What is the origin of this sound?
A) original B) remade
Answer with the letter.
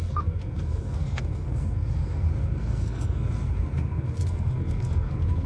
B